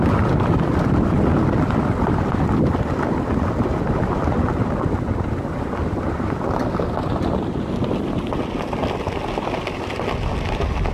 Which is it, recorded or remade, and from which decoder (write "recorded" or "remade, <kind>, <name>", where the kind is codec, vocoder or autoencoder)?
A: recorded